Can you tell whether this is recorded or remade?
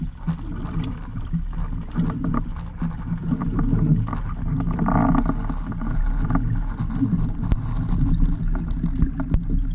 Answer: recorded